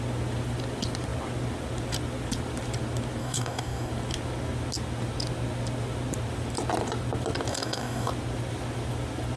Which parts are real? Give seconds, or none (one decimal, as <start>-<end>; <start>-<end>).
0.0-3.2; 3.9-7.5; 8.1-9.4